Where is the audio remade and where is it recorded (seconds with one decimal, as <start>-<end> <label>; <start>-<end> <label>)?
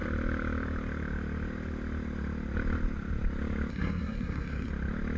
0.0-3.7 recorded; 3.7-4.7 remade; 4.7-5.2 recorded